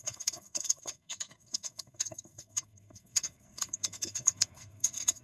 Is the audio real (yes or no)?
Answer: no